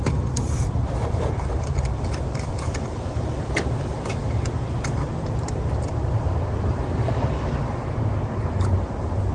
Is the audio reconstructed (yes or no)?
no